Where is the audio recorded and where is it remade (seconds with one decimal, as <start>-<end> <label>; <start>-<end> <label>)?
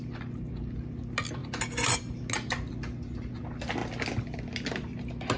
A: 0.0-5.4 recorded